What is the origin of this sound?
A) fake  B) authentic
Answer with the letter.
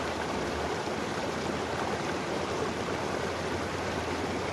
B